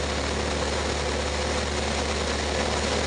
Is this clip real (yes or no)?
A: yes